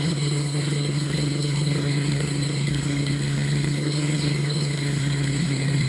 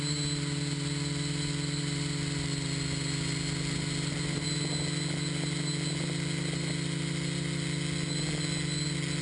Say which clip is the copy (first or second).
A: first